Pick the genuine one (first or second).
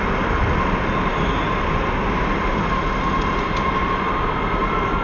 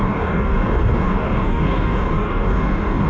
first